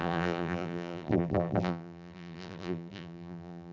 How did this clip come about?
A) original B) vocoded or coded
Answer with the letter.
B